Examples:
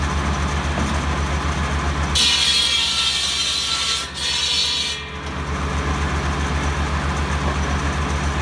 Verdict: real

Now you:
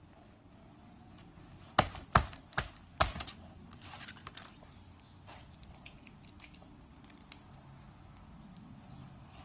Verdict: real